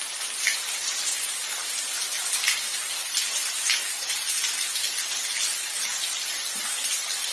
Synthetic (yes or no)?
no